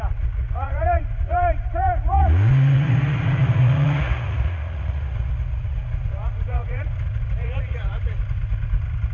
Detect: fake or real fake